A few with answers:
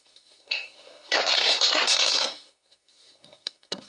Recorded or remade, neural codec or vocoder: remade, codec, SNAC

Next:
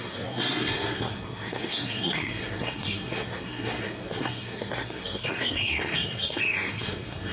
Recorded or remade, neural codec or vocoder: remade, codec, SNAC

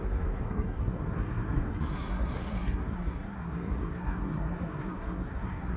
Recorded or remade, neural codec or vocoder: remade, codec, SNAC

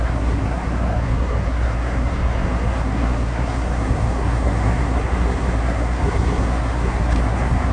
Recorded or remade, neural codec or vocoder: remade, codec, SNAC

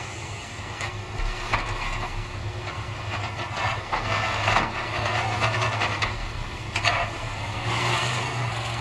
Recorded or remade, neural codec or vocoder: remade, codec, SNAC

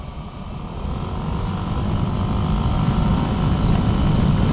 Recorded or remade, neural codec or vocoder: recorded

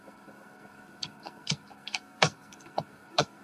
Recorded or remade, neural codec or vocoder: remade, codec, SNAC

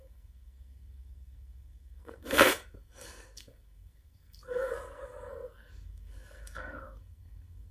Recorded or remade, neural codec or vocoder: remade, codec, SNAC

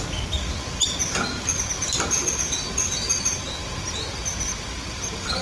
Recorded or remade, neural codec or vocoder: recorded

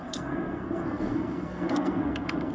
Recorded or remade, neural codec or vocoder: remade, codec, SNAC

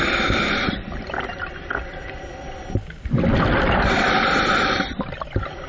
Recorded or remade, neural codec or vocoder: recorded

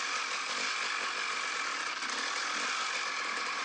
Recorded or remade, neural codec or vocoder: recorded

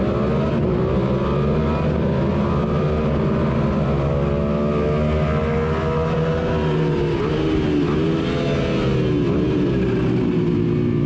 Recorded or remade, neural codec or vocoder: recorded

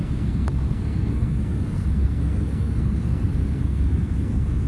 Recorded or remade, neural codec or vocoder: remade, codec, SNAC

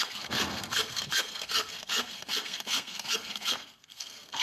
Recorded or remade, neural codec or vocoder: remade, codec, SNAC